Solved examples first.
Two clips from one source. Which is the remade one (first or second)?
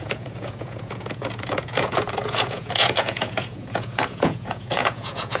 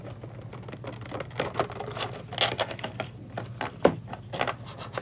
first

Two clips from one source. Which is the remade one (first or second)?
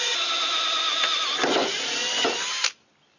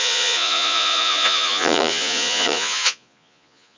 second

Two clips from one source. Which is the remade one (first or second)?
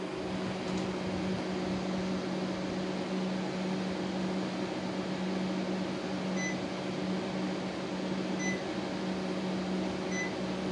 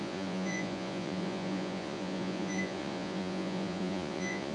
second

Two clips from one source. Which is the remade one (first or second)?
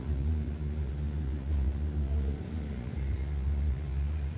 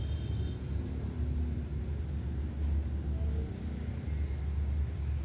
first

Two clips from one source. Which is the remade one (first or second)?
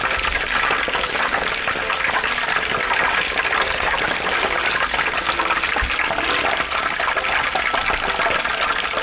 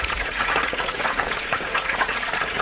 second